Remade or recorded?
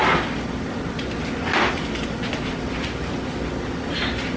recorded